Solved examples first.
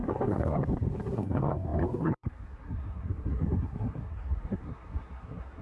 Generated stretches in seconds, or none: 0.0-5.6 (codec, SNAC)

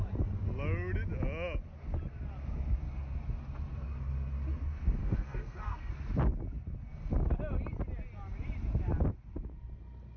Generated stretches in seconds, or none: 5.0-5.9 (codec, SNAC)

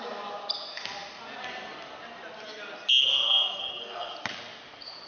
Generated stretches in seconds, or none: 3.0-4.1 (codec, SNAC)

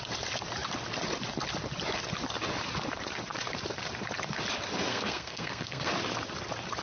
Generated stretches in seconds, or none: 4.9-5.9 (codec, SNAC)

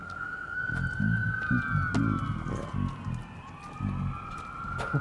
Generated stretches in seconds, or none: 0.0-0.6 (codec, SNAC)